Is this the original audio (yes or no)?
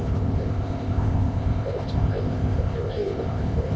no